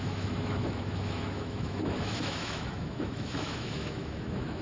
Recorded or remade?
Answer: remade